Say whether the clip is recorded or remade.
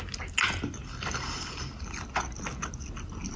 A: recorded